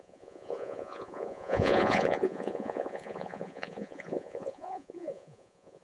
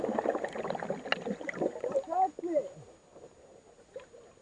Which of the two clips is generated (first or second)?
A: first